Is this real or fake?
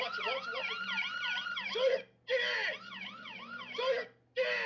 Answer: real